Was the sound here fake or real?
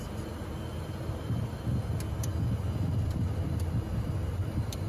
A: real